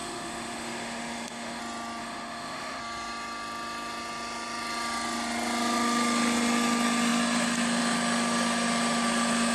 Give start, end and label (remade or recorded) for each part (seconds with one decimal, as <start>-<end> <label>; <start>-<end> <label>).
0.0-1.6 remade; 1.6-2.0 recorded; 2.0-2.8 remade; 2.8-9.5 recorded